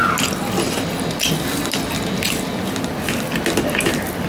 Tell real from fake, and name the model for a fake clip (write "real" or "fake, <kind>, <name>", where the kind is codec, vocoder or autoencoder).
real